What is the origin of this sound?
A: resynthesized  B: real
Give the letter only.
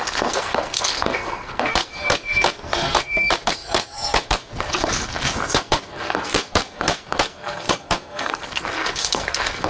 A